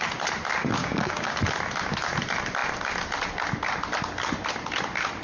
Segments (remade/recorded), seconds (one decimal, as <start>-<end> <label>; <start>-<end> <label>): 0.0-0.8 recorded; 0.8-1.4 remade; 1.4-5.2 recorded